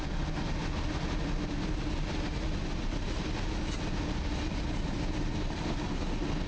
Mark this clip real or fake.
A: real